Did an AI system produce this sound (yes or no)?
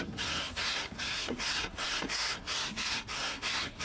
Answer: yes